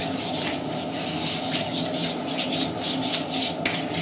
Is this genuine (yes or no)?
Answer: yes